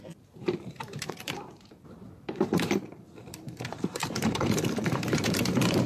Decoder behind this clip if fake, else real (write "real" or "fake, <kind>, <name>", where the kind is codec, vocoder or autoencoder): fake, vocoder, BigVGAN v2